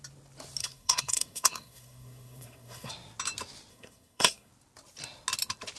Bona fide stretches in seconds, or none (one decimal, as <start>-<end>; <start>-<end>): 0.0-0.6; 2.9-3.7; 4.5-5.8